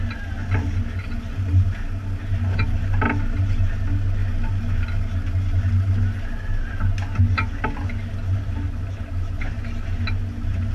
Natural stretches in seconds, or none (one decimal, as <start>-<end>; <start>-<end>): 0.0-10.7